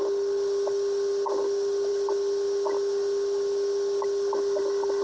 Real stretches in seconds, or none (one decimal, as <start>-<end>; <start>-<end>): 0.0-5.0